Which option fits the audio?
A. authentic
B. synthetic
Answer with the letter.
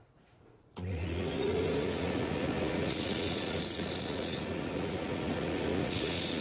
B